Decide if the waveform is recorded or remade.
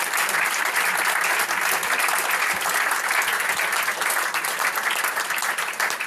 recorded